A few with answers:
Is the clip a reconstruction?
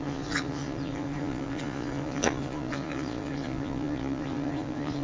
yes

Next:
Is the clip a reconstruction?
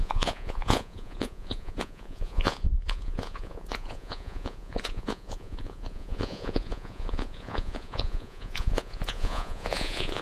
yes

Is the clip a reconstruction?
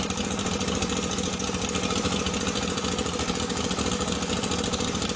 no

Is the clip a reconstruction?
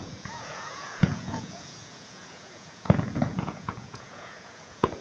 yes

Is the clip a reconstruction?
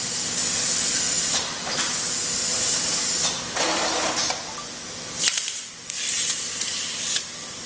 no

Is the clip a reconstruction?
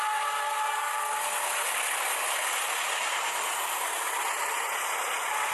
no